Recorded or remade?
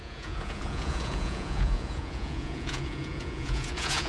remade